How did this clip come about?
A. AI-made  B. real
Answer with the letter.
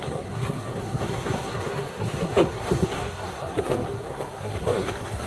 A